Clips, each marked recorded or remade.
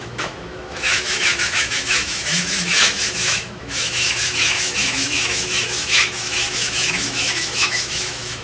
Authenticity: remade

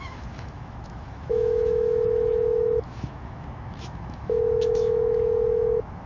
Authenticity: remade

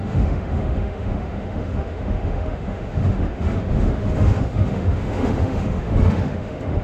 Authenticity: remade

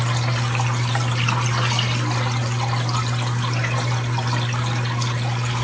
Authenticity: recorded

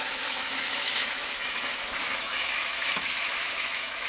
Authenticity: remade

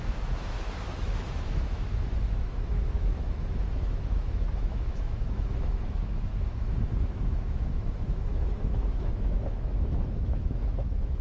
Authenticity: remade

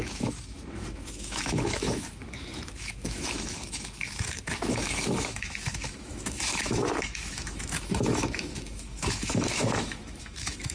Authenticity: remade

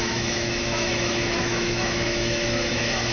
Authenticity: remade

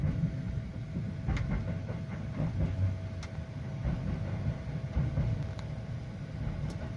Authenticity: recorded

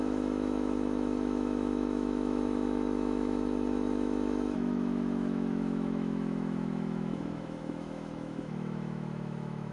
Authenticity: remade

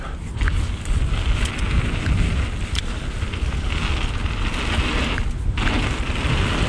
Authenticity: recorded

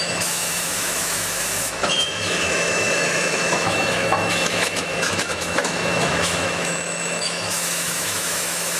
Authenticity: remade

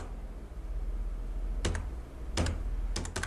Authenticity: recorded